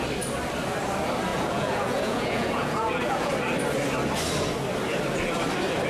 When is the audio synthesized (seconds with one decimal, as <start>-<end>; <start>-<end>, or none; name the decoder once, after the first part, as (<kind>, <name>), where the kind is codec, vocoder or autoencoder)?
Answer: 1.3-3.3 (vocoder, Vocos)